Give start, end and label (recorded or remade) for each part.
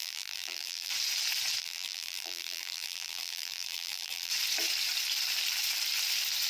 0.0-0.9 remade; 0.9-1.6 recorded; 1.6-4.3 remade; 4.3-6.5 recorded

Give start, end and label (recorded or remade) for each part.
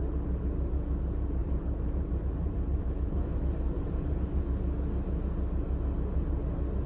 0.0-1.4 recorded; 1.4-4.4 remade; 4.4-6.9 recorded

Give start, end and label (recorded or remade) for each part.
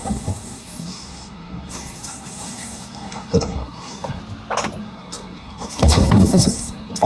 0.0-4.2 remade; 4.2-4.8 recorded; 4.8-7.1 remade